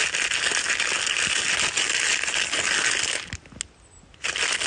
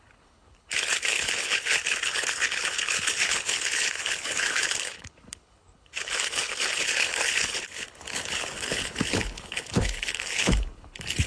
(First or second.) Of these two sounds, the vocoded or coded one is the second